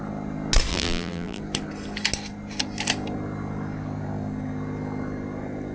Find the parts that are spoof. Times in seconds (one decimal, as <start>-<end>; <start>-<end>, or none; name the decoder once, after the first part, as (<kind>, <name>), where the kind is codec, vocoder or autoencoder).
0.7-1.4 (vocoder, BigVGAN v2)